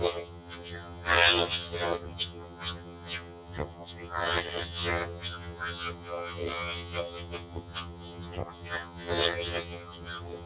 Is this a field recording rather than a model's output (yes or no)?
no